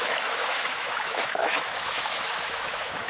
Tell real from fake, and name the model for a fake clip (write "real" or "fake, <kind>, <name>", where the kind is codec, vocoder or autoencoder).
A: fake, autoencoder, DAC-VAE